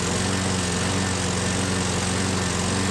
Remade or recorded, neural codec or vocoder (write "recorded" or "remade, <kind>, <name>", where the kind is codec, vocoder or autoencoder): recorded